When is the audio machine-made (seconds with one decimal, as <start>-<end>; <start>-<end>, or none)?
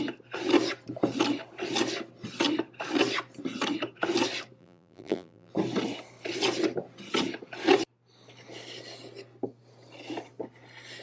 4.6-5.5